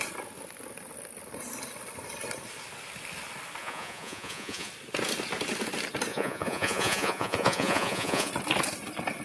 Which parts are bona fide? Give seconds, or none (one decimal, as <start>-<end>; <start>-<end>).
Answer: 0.0-3.6; 4.7-6.1; 8.3-9.2